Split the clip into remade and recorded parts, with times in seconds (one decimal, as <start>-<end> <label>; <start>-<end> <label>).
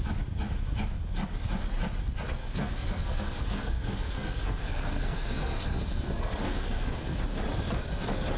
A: 0.0-2.4 recorded; 2.4-7.2 remade; 7.2-8.4 recorded